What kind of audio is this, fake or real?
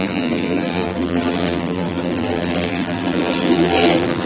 fake